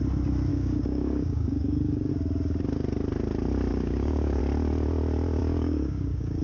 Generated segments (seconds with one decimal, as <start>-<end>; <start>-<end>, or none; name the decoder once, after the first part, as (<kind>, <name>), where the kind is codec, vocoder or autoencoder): 0.5-2.1 (codec, DAC); 3.7-4.4; 5.4-6.4